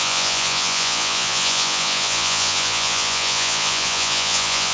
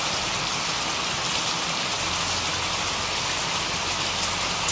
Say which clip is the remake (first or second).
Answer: first